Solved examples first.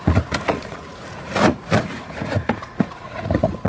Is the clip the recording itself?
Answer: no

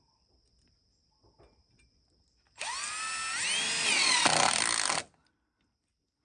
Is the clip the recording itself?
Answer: yes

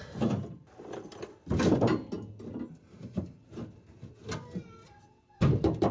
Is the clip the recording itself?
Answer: yes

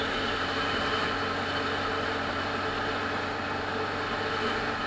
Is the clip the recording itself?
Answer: yes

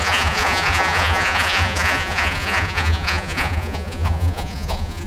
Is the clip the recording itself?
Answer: no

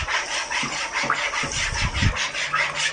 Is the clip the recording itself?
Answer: yes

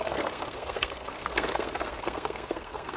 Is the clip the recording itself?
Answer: no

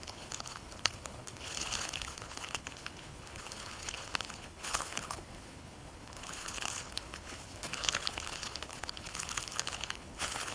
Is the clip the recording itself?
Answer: no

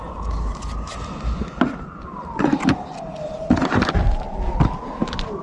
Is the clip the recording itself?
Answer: yes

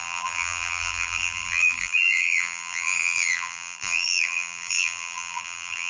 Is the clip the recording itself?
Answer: no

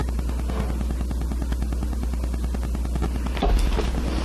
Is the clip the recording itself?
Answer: yes